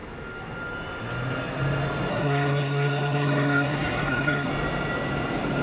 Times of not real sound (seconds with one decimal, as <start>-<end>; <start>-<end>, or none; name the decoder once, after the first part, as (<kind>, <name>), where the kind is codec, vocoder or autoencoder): 2.1-4.5 (codec, SNAC)